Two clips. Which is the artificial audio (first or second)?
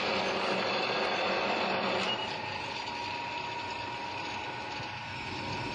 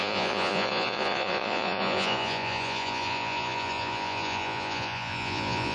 second